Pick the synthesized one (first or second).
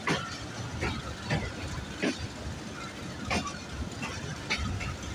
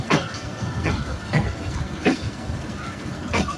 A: second